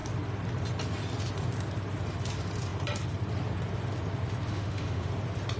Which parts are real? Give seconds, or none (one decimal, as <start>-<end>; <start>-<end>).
0.0-4.5; 5.1-5.6